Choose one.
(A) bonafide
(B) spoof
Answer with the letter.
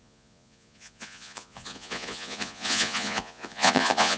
B